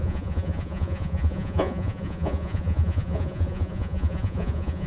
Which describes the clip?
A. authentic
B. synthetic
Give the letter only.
B